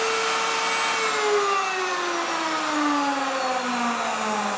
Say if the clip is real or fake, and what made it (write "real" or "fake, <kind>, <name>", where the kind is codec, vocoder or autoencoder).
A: real